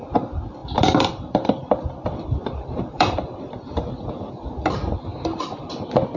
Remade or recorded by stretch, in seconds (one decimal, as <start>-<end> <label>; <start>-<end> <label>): 0.0-0.6 recorded; 0.6-4.3 remade; 4.3-5.1 recorded; 5.1-5.7 remade; 5.7-6.2 recorded